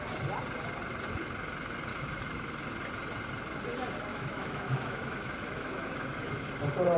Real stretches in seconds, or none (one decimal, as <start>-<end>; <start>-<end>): 0.0-1.9; 2.5-4.1; 6.5-7.0